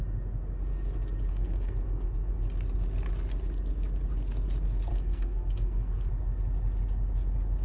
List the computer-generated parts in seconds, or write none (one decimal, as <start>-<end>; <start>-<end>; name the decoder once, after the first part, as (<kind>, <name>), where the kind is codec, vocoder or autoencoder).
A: 1.3-2.3 (codec, SNAC); 4.9-6.1

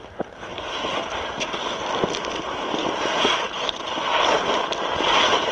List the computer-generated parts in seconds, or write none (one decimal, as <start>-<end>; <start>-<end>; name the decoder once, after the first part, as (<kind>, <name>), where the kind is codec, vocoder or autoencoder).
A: 0.5-1.6 (vocoder, BigVGAN v2); 2.8-3.8